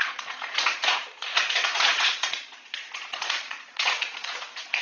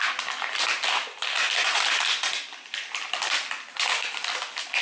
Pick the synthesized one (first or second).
first